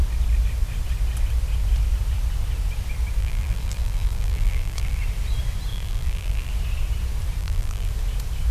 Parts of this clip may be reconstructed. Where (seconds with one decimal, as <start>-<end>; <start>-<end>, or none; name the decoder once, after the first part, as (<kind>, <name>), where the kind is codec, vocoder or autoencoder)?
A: 3.2-5.0 (vocoder, BigVGAN v2); 5.7-6.5; 7.4-7.9